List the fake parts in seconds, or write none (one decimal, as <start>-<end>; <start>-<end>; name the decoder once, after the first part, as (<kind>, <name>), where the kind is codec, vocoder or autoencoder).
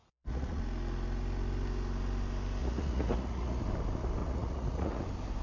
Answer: 0.0-0.6 (vocoder, Vocos); 2.6-3.6; 4.2-5.0